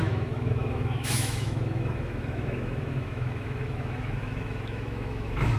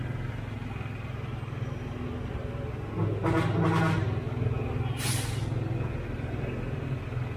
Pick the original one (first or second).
second